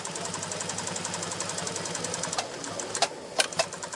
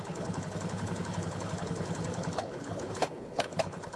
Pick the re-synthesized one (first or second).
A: second